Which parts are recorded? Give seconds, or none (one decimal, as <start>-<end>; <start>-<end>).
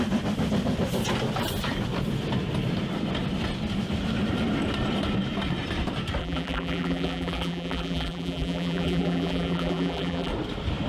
0.0-6.2; 10.3-10.9